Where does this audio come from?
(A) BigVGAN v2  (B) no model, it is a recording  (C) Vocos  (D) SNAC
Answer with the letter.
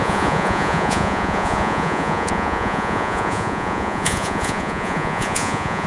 C